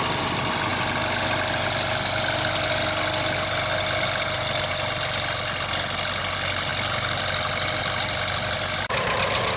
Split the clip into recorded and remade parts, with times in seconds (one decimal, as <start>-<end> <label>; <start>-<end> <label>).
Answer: 0.0-9.6 recorded